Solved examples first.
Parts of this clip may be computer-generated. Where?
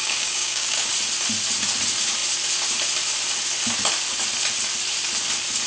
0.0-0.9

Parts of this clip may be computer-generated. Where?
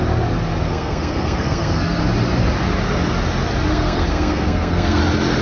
0.7-2.0; 3.7-5.0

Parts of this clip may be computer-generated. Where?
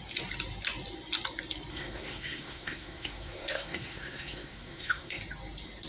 1.7-5.2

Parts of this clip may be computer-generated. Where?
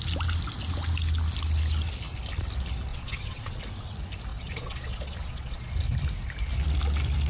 2.9-3.6; 4.3-5.7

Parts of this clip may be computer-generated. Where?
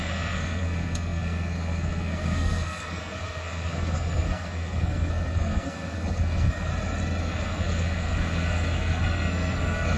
0.0-6.7; 7.2-10.0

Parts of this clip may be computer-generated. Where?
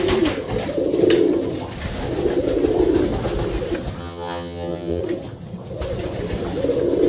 4.0-5.0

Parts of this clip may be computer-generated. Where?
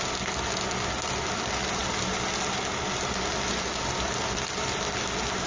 none